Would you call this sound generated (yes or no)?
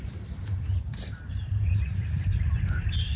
yes